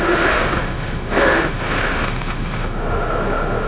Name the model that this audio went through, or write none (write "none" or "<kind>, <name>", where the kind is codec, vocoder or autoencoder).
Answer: autoencoder, DAC-VAE